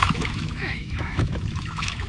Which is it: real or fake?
fake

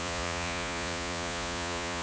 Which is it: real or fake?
fake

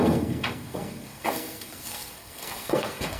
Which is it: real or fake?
fake